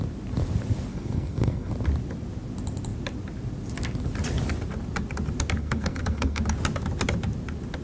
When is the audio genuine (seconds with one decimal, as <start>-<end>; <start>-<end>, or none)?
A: 0.0-0.9; 1.7-5.6; 6.4-7.8